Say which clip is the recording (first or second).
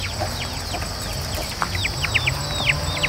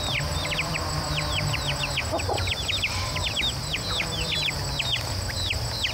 first